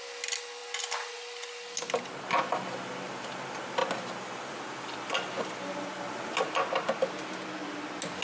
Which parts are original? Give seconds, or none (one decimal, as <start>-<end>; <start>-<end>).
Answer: 0.0-8.2